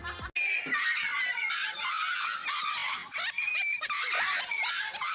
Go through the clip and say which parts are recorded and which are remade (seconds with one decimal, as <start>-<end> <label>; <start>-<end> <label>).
0.0-5.1 recorded